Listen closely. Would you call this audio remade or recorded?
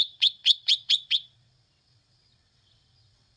remade